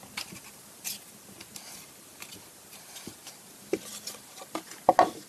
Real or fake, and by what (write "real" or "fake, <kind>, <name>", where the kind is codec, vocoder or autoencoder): real